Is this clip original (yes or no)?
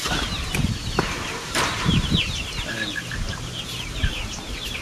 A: no